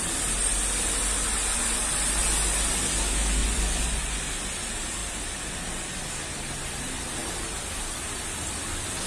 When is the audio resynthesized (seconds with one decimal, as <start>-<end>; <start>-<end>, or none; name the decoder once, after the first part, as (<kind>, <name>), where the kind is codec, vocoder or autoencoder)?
3.4-4.2 (vocoder, Vocos)